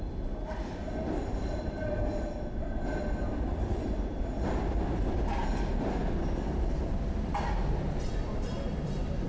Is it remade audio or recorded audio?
recorded